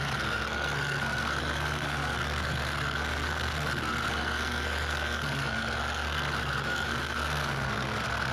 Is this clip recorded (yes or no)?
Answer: no